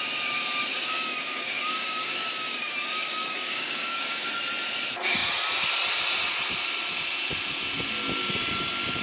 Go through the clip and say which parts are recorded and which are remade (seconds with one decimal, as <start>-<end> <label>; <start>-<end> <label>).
0.0-0.7 recorded; 0.7-4.3 remade; 4.3-9.0 recorded